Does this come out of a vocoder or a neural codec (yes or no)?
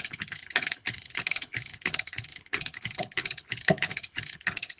yes